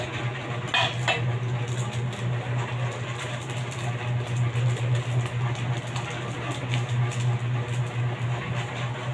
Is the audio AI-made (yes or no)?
no